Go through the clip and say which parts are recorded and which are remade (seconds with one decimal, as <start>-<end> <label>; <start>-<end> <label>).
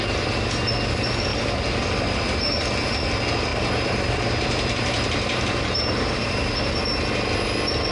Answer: 0.0-3.5 recorded; 3.5-6.8 remade; 6.8-7.9 recorded